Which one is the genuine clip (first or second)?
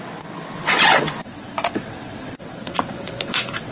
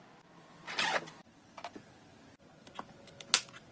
second